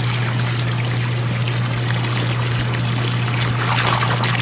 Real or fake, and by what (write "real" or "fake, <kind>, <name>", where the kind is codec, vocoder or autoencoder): real